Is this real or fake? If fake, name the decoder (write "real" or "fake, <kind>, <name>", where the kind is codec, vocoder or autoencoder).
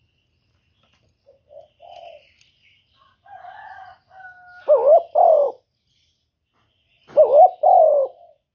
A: real